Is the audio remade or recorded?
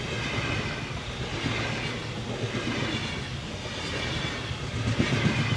recorded